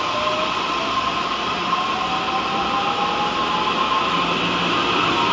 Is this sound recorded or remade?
recorded